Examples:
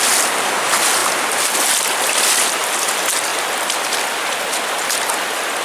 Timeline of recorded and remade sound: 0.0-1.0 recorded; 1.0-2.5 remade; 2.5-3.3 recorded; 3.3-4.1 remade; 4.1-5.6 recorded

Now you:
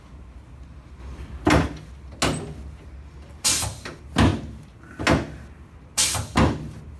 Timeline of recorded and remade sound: 0.0-7.0 recorded

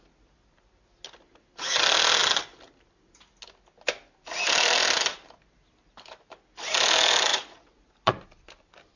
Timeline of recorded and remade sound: 0.0-7.3 recorded; 7.3-8.1 remade; 8.1-9.0 recorded

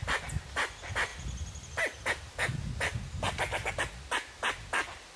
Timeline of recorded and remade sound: 0.0-5.2 recorded

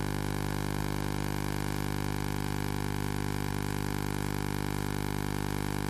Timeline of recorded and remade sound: 0.0-5.9 recorded

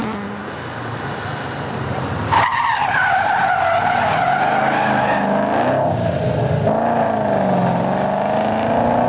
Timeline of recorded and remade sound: 0.0-2.5 recorded; 2.5-3.3 remade; 3.3-9.1 recorded

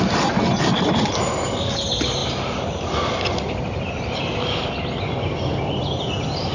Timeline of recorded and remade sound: 0.0-6.5 recorded